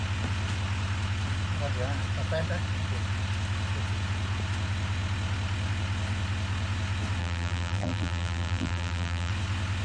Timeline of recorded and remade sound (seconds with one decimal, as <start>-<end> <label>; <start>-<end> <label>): 0.0-7.2 recorded; 7.2-9.3 remade; 9.3-9.8 recorded